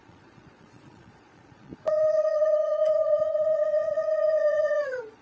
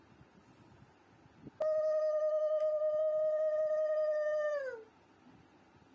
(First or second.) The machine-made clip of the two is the first